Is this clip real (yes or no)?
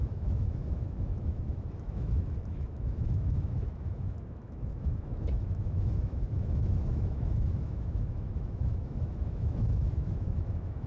no